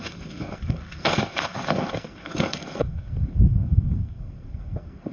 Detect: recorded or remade remade